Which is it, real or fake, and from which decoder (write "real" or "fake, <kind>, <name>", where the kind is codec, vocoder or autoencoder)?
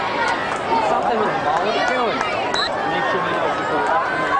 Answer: real